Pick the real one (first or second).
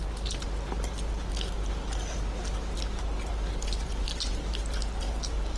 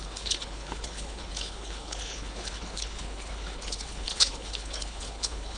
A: first